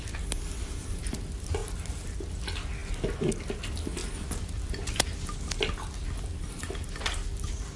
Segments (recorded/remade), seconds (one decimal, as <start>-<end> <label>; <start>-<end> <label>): 0.0-7.8 recorded